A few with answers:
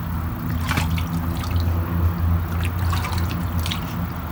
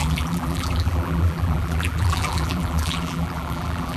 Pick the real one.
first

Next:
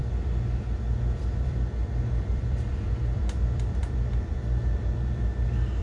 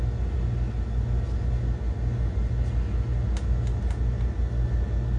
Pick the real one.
second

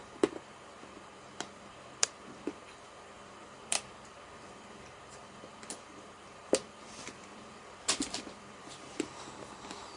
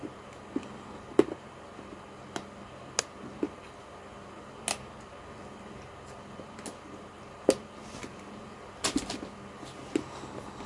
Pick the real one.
second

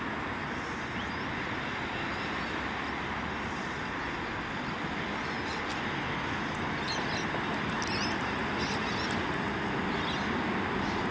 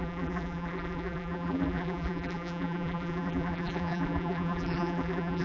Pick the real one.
first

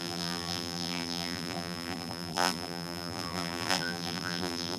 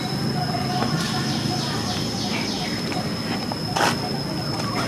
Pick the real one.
second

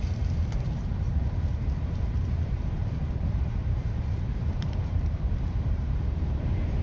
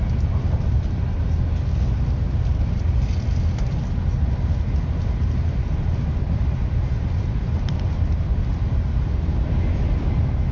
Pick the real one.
second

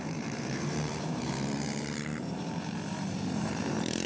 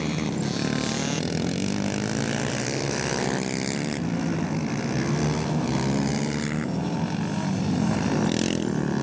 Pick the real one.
second